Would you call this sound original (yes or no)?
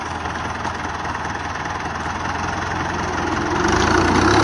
yes